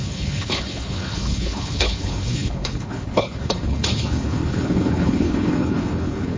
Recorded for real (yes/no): no